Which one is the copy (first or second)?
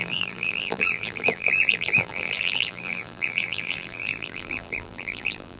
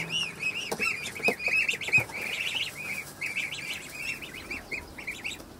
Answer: first